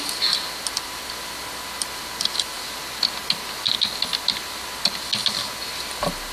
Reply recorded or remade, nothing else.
recorded